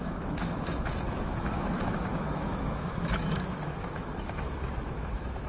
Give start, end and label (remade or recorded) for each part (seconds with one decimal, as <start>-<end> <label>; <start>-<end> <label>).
0.0-5.5 remade